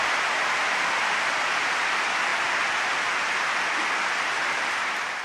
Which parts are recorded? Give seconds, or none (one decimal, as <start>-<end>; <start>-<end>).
0.0-5.2

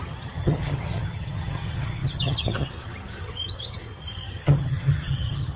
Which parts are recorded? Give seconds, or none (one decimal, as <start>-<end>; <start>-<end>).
none

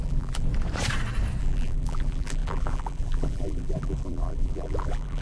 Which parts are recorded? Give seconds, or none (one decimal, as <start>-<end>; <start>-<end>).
0.5-1.4